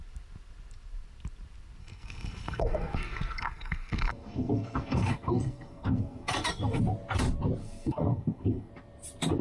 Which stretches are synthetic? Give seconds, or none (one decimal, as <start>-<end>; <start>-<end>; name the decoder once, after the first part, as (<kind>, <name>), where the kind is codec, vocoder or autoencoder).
1.8-6.8 (codec, SNAC); 7.6-8.7